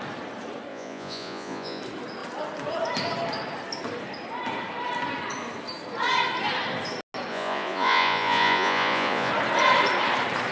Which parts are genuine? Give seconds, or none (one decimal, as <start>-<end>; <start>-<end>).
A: 0.0-0.7; 1.8-7.3; 9.3-10.5